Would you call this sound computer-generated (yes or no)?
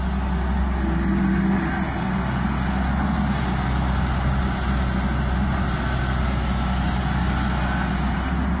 no